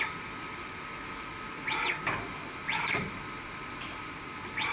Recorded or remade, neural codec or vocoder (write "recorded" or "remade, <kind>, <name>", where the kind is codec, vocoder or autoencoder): recorded